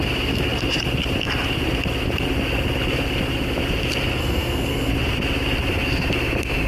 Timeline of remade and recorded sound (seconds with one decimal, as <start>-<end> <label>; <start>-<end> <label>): 0.0-4.2 recorded; 4.2-4.9 remade; 4.9-6.7 recorded